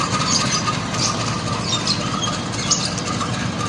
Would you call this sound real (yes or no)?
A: yes